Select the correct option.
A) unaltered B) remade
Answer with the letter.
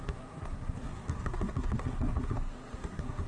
B